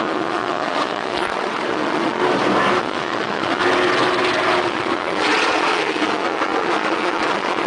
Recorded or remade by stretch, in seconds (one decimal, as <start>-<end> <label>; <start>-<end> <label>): 0.0-2.2 remade; 2.2-2.8 recorded; 2.8-3.6 remade; 3.6-4.6 recorded; 4.6-7.7 remade